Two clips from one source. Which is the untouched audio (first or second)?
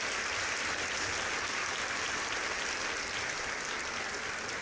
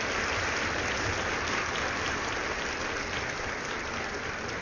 first